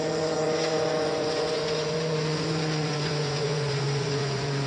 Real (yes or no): no